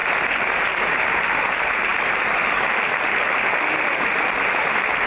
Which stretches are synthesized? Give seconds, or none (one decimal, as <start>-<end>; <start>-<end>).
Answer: none